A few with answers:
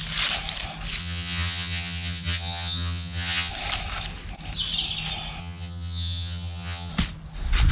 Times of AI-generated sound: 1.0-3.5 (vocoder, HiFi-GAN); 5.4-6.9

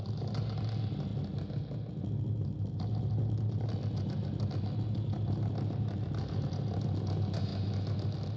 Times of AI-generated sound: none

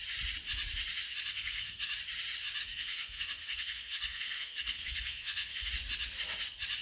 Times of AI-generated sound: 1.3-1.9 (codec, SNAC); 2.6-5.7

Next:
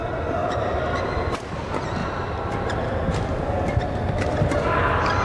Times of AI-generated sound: 0.4-1.4 (vocoder, BigVGAN v2); 2.0-3.0